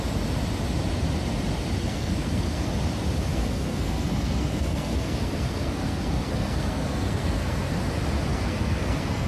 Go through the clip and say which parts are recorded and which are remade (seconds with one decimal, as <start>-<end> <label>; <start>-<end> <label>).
0.0-1.8 recorded; 1.8-2.7 remade; 2.7-3.3 recorded; 3.3-7.7 remade; 7.7-8.3 recorded; 8.3-9.3 remade